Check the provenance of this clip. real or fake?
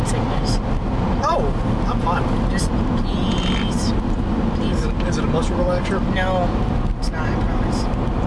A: real